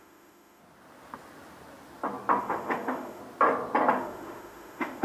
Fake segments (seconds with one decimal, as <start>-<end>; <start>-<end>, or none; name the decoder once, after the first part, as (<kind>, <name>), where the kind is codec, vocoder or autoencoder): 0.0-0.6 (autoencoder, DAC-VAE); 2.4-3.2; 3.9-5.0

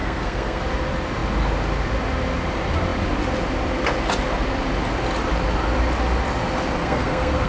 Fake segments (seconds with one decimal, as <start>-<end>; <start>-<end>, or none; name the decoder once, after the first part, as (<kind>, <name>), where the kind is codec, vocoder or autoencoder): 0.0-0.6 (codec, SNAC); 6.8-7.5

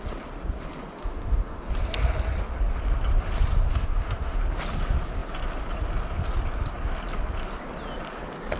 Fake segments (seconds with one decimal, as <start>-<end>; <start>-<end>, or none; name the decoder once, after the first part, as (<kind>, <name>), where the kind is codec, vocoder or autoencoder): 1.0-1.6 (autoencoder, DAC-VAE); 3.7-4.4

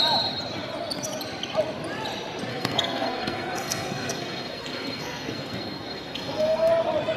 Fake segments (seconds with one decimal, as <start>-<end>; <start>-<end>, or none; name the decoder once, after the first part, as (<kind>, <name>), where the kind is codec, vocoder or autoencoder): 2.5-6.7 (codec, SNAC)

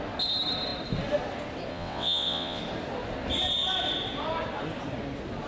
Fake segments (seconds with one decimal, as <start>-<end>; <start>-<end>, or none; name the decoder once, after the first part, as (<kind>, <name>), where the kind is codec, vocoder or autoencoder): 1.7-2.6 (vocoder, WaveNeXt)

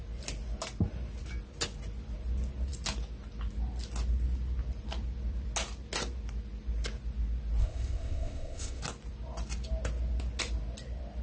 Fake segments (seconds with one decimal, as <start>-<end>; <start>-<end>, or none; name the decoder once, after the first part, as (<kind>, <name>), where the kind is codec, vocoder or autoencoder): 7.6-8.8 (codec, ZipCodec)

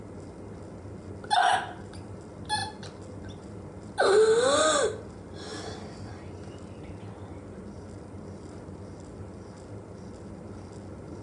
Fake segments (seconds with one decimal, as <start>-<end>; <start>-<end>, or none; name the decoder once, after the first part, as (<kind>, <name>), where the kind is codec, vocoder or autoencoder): none

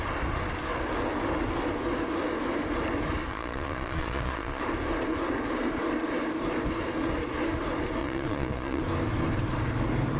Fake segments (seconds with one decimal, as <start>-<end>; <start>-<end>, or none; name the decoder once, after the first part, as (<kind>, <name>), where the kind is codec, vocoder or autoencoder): 3.3-4.6 (vocoder, Vocos); 8.0-8.8